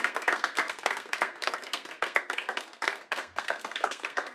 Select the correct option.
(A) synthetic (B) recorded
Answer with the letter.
A